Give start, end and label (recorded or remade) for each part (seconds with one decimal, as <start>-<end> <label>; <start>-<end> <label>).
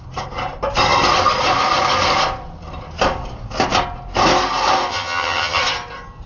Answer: 0.0-4.9 recorded; 4.9-5.6 remade; 5.6-6.3 recorded